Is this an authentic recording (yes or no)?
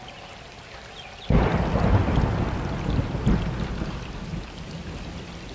yes